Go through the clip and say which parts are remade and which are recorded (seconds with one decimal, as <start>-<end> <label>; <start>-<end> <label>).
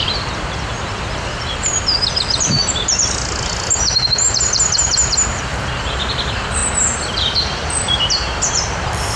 0.0-2.6 remade; 2.6-5.3 recorded; 5.3-6.6 remade; 6.6-7.4 recorded; 7.4-9.2 remade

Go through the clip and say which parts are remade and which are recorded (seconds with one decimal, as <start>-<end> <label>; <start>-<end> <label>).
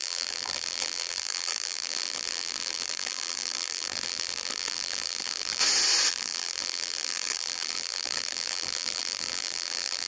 0.0-5.6 remade; 5.6-6.1 recorded; 6.1-10.1 remade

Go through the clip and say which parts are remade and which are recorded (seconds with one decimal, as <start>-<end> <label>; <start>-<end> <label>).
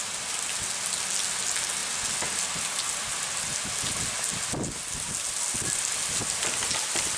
0.0-7.2 recorded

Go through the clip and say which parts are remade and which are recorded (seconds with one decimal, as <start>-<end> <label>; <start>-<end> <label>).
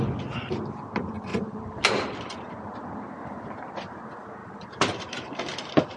0.0-1.3 recorded; 1.3-1.8 remade; 1.8-4.4 recorded; 4.4-5.0 remade; 5.0-6.0 recorded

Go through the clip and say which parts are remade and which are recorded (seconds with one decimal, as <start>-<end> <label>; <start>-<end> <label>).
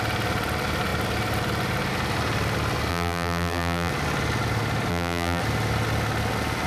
0.0-2.9 recorded; 2.9-3.9 remade; 3.9-4.9 recorded; 4.9-5.4 remade; 5.4-6.7 recorded